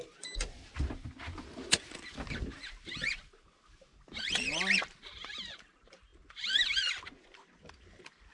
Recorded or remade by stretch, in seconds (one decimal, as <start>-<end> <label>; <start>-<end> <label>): 0.0-8.3 recorded